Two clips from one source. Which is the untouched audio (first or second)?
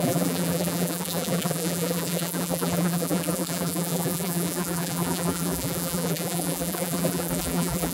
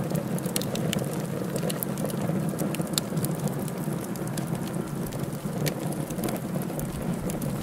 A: second